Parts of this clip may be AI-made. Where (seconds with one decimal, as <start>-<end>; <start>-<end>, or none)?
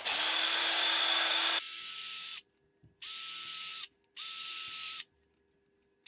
0.6-1.9